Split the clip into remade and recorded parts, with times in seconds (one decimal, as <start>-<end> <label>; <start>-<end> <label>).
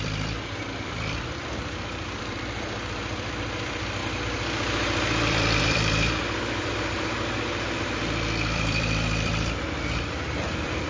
0.0-10.9 remade